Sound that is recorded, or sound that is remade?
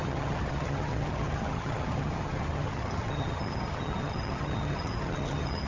remade